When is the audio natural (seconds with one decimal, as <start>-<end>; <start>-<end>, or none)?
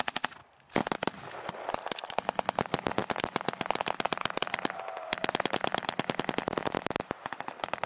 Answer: 0.0-0.8; 2.6-7.9